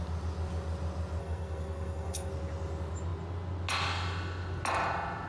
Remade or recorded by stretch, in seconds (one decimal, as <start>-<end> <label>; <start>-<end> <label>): 0.0-1.2 recorded; 1.2-2.3 remade; 2.3-5.3 recorded